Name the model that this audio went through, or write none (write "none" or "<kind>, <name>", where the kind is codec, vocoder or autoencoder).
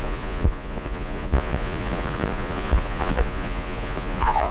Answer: vocoder, Vocos